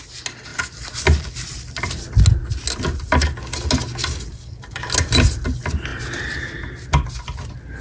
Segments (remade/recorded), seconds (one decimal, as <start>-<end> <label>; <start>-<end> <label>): 0.0-7.8 recorded